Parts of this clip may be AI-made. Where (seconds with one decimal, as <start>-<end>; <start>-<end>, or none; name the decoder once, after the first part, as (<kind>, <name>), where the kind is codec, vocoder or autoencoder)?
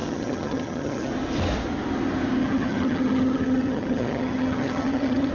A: 0.0-1.1 (vocoder, HiFi-GAN); 2.4-5.3